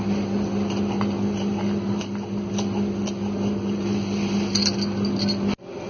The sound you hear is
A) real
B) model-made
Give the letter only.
A